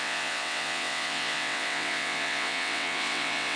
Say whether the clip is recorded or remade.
remade